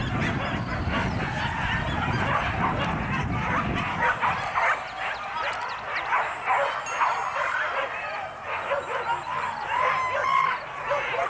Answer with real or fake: real